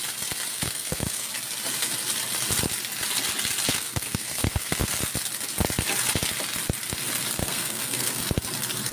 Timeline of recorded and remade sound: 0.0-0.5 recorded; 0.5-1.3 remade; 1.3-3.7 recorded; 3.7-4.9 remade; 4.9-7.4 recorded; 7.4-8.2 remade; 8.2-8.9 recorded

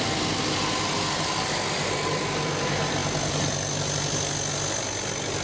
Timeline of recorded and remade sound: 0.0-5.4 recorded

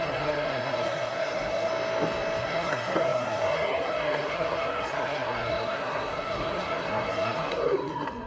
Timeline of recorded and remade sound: 0.0-1.7 remade; 1.7-2.4 recorded; 2.4-8.3 remade

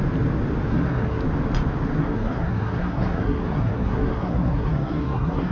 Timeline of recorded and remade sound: 0.0-0.7 recorded; 0.7-1.2 remade; 1.2-2.0 recorded; 2.0-5.5 remade

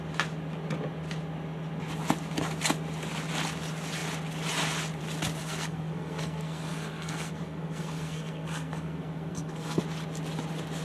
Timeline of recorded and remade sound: 0.0-5.4 recorded; 5.4-9.8 remade; 9.8-10.8 recorded

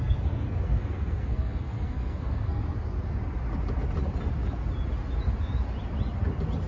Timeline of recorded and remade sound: 0.0-2.6 remade; 2.6-6.7 recorded

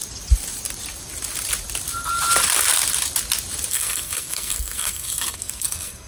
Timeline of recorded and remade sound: 0.0-3.7 recorded; 3.7-6.1 remade

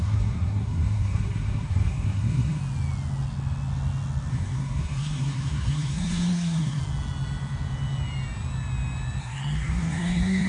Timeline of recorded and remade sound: 0.0-2.6 remade; 2.6-4.3 recorded; 4.3-6.8 remade; 6.8-9.2 recorded; 9.2-10.5 remade